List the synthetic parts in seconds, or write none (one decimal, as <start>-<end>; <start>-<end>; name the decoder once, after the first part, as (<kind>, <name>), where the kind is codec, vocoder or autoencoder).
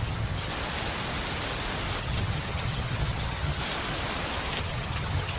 0.0-0.5 (vocoder, HiFi-GAN); 2.0-3.6; 4.6-5.4